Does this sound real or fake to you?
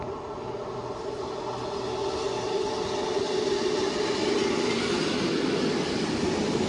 real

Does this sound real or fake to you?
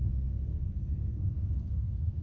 fake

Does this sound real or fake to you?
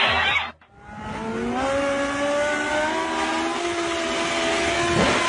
real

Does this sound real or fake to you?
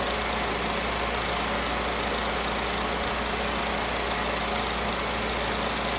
real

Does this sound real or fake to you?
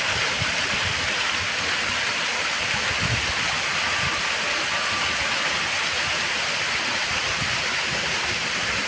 fake